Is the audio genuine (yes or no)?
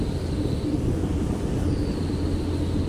yes